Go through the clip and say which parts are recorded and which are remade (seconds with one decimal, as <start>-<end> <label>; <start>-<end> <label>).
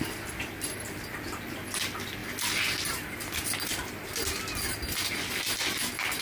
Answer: 0.0-6.2 recorded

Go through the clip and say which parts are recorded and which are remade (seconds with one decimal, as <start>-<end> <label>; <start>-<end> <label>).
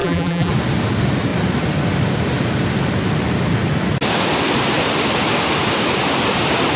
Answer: 0.0-0.5 remade; 0.5-6.8 recorded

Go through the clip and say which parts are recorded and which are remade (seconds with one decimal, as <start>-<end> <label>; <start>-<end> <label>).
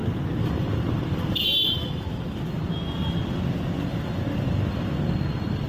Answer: 0.0-2.0 remade; 2.0-3.9 recorded; 3.9-5.7 remade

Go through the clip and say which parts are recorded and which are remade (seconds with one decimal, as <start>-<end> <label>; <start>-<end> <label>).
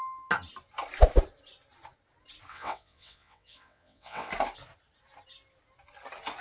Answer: 0.0-2.5 recorded; 2.5-4.3 remade; 4.3-6.4 recorded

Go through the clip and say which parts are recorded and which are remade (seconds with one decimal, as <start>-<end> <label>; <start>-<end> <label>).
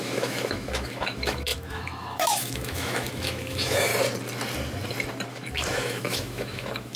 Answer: 0.0-3.9 remade; 3.9-5.3 recorded; 5.3-7.0 remade